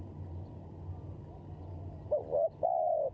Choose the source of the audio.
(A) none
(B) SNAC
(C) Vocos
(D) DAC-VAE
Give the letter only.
A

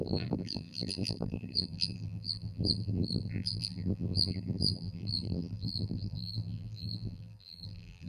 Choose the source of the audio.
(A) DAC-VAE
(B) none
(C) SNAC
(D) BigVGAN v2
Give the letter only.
D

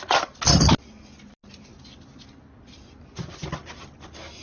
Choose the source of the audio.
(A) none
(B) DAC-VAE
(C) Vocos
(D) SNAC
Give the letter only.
A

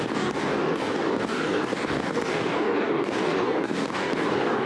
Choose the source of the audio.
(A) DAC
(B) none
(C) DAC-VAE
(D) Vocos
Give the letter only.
A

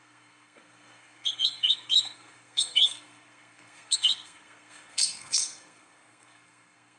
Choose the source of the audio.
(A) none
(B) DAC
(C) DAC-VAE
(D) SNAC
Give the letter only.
D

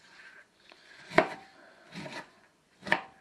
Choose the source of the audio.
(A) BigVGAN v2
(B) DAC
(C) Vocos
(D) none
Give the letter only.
C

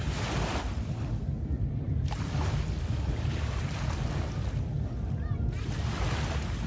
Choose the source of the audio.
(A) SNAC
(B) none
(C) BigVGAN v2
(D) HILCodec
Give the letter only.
B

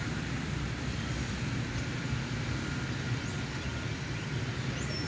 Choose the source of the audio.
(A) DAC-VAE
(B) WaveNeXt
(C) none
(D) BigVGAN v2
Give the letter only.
C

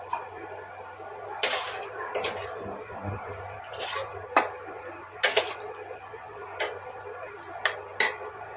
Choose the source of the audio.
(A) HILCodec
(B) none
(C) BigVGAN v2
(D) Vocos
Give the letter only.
B